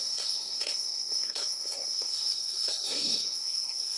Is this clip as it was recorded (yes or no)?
no